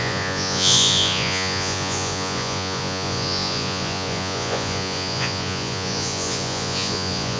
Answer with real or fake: fake